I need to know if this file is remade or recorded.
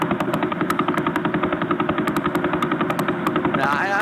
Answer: recorded